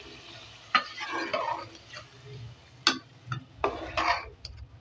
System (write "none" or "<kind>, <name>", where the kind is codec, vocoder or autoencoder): none